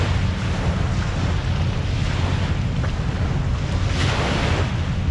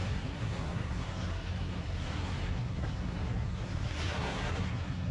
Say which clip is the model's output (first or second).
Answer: second